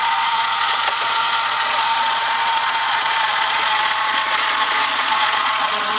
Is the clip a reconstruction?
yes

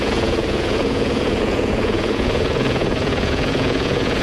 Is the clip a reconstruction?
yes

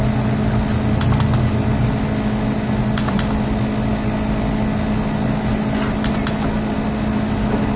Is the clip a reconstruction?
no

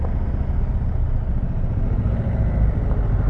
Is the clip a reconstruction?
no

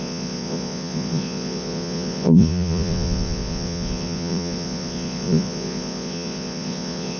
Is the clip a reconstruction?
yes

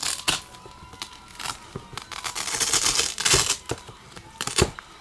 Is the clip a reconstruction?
no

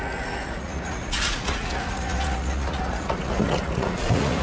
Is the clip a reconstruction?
yes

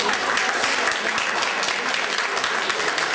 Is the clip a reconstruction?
no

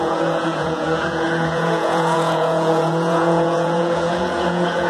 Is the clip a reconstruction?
yes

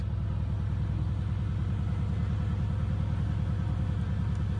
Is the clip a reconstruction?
no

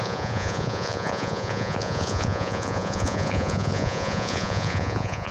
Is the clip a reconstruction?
yes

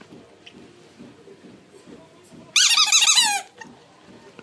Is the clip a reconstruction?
no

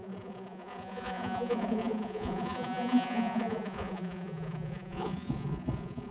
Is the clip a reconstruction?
yes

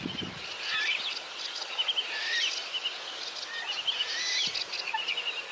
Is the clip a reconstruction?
no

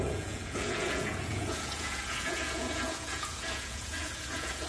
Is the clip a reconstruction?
yes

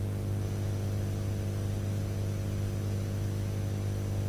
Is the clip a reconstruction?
no